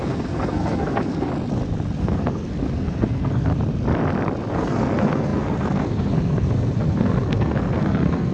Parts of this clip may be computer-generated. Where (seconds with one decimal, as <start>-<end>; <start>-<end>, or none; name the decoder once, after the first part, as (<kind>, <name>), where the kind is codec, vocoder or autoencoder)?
0.0-1.3 (codec, SNAC); 2.0-3.5; 4.5-8.3